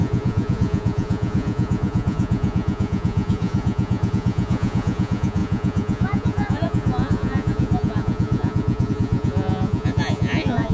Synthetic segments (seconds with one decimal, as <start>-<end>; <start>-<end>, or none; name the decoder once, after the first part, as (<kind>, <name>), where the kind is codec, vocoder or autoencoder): 0.0-10.7 (vocoder, Vocos)